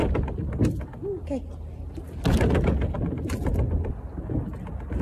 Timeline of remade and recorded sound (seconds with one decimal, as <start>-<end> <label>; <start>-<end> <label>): 0.0-5.0 recorded